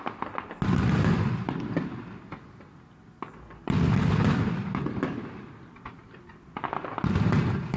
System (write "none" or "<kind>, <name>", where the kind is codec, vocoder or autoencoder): none